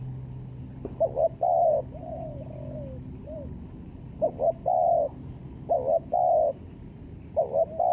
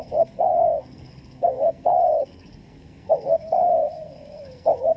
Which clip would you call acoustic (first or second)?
first